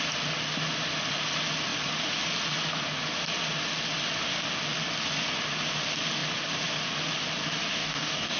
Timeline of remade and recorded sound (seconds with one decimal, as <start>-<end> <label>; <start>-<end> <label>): 0.0-7.7 recorded; 7.7-8.4 remade